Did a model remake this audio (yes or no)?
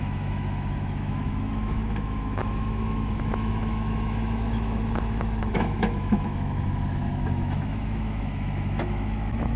yes